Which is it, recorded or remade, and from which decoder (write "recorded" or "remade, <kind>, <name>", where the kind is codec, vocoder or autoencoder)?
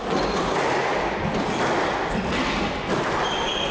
recorded